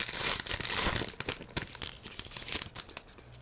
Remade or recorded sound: recorded